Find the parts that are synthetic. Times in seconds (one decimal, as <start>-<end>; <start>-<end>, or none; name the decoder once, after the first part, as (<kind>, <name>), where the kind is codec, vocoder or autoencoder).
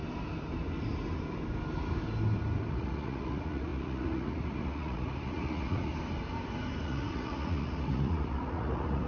2.7-5.9 (vocoder, Vocos); 6.8-9.1